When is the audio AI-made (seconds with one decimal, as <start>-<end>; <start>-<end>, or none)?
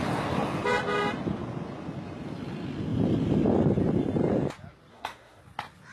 4.9-5.4